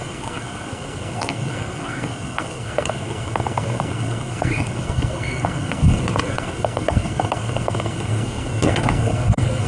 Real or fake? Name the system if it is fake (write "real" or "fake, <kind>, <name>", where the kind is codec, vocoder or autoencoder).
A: fake, codec, SNAC